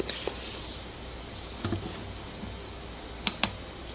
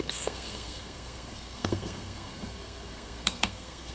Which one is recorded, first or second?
first